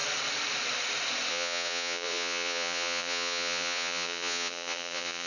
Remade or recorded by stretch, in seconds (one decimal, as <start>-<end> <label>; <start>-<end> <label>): 0.0-1.3 recorded; 1.3-5.3 remade